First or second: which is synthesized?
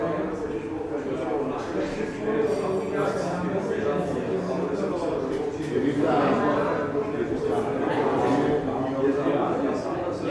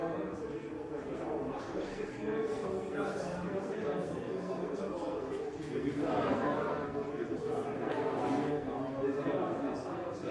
second